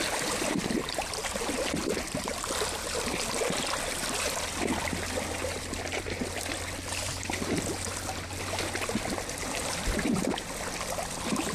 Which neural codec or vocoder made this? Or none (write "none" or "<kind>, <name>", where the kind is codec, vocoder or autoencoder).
none